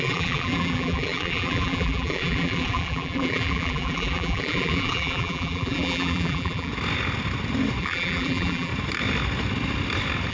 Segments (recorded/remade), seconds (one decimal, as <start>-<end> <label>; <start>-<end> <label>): 0.0-6.7 remade; 6.7-7.8 recorded; 7.8-8.7 remade; 8.7-10.3 recorded